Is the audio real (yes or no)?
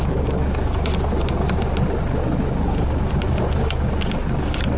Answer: yes